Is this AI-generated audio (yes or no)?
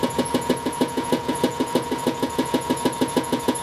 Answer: yes